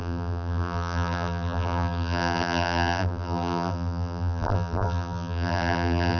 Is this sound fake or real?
fake